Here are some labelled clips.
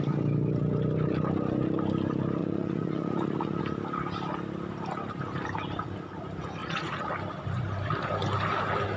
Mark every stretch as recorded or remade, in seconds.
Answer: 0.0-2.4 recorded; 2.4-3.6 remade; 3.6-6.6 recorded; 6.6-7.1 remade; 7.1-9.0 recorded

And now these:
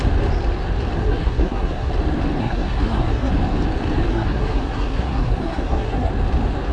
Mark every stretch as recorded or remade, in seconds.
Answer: 0.0-1.0 recorded; 1.0-1.9 remade; 1.9-2.4 recorded; 2.4-3.3 remade; 3.3-4.1 recorded; 4.1-6.1 remade; 6.1-6.7 recorded

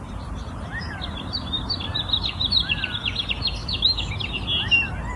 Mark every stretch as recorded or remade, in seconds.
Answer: 0.0-3.6 recorded; 3.6-4.1 remade; 4.1-5.2 recorded

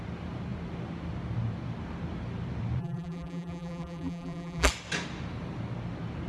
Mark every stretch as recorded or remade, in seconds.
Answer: 0.0-2.8 recorded; 2.8-4.7 remade; 4.7-6.3 recorded

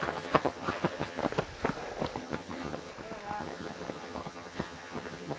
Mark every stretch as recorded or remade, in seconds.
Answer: 0.0-1.2 remade; 1.2-2.2 recorded; 2.2-2.9 remade; 2.9-3.4 recorded; 3.4-5.4 remade

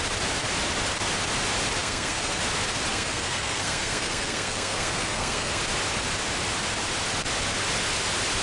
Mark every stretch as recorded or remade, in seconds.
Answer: 0.0-1.8 recorded; 1.8-2.4 remade; 2.4-2.9 recorded; 2.9-5.6 remade; 5.6-8.4 recorded